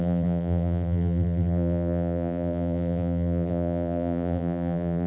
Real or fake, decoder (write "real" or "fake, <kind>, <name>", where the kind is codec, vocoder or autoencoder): fake, vocoder, BigVGAN v2